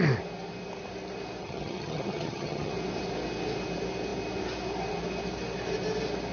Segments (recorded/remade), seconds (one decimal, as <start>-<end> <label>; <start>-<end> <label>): 0.0-1.4 recorded; 1.4-2.7 remade; 2.7-6.3 recorded